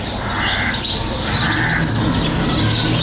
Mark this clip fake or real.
real